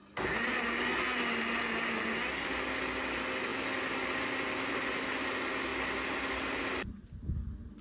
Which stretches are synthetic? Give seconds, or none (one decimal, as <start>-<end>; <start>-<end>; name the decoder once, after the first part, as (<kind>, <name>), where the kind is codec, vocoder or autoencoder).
none